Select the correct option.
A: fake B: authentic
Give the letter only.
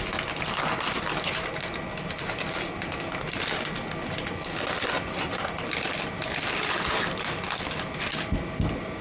B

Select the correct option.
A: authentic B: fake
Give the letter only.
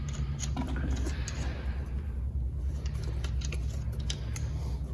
A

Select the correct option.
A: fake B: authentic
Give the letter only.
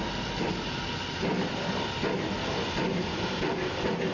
B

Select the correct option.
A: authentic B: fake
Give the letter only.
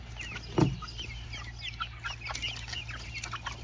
A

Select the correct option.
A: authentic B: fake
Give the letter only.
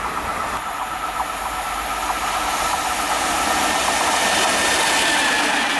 A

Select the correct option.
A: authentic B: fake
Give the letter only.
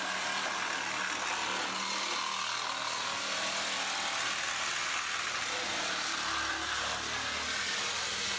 A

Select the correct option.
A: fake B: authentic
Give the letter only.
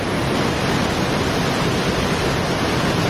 B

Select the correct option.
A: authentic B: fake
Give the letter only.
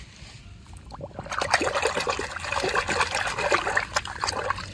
A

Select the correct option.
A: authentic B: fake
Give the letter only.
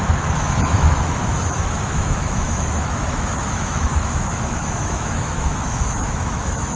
B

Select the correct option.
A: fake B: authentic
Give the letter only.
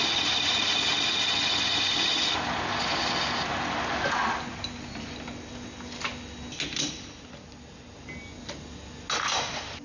B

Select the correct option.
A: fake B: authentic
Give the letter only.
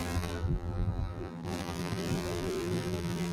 A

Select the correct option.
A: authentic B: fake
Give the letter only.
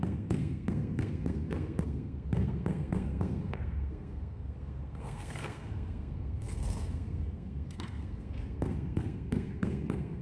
B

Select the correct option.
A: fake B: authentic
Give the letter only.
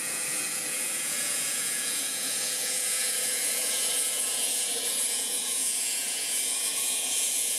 A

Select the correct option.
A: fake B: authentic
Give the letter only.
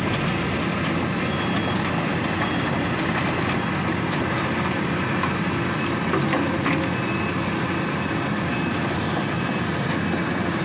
B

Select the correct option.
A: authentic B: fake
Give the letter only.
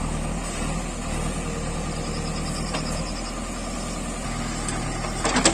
A